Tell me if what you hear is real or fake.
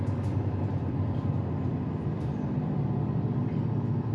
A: fake